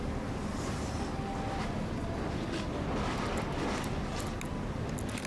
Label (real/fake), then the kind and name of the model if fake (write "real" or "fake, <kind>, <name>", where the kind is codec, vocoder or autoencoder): real